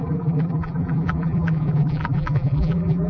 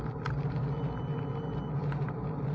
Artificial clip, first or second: first